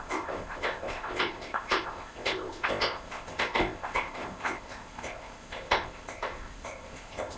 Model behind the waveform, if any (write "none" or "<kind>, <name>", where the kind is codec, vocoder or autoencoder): codec, ZipCodec